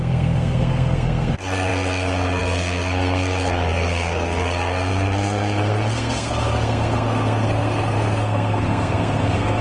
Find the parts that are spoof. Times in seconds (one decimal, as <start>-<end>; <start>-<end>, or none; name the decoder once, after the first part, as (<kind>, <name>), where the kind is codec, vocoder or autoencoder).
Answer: 0.0-9.6 (codec, SNAC)